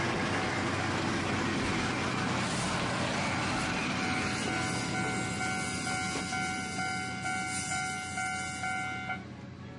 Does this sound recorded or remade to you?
recorded